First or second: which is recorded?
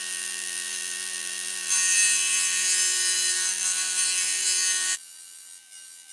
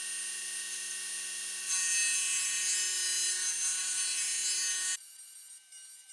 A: second